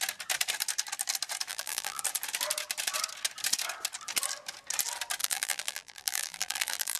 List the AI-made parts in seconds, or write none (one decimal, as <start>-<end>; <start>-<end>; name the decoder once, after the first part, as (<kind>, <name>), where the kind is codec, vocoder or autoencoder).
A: 1.5-2.0 (vocoder, BigVGAN v2); 5.2-7.0